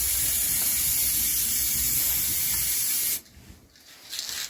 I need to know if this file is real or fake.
real